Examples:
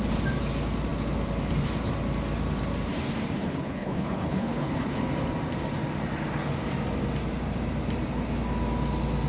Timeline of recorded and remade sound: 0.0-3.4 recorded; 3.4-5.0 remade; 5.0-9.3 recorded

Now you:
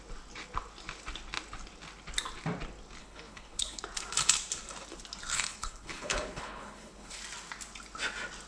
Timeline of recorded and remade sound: 0.0-3.0 recorded; 3.0-3.8 remade; 3.8-5.3 recorded; 5.3-7.2 remade; 7.2-8.5 recorded

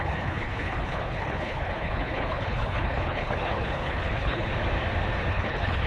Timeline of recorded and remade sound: 0.0-4.5 remade; 4.5-5.3 recorded; 5.3-5.9 remade